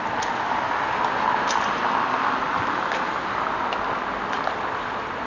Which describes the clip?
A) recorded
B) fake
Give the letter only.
A